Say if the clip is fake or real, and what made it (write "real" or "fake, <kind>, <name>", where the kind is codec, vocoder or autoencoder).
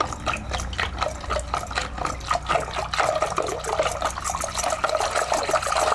real